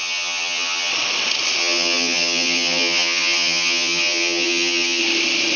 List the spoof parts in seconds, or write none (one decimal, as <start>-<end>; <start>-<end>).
0.0-0.9; 1.6-5.0